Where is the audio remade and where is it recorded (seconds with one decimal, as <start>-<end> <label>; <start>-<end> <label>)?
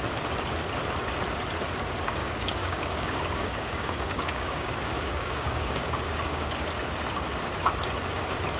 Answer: 0.0-2.2 recorded; 2.2-6.7 remade; 6.7-8.6 recorded